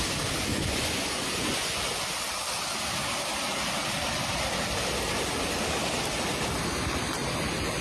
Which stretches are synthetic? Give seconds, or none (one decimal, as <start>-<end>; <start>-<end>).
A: 0.5-1.8